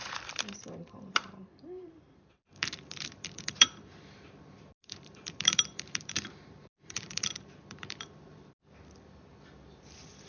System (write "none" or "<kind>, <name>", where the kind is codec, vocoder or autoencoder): vocoder, BigVGAN v2